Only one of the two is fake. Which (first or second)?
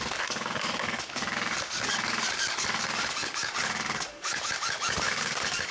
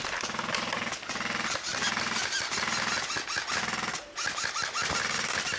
first